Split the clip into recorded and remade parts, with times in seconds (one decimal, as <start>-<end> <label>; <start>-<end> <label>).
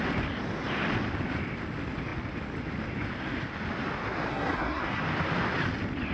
0.0-4.3 recorded; 4.3-5.0 remade; 5.0-6.1 recorded